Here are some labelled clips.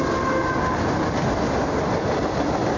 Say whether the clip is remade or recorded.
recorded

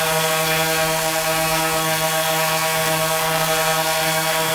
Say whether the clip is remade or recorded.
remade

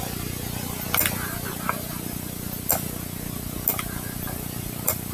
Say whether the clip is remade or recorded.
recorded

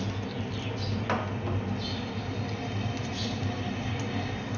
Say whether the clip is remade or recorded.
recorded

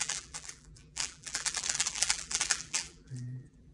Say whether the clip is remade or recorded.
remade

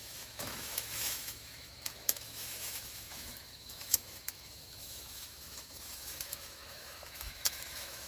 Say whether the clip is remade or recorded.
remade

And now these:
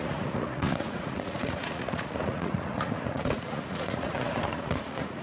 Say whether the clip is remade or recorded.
remade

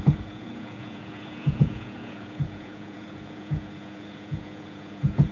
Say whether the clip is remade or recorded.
remade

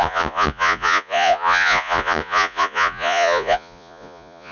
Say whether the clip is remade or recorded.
remade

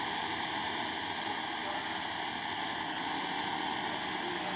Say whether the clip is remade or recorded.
recorded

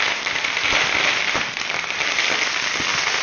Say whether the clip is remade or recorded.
recorded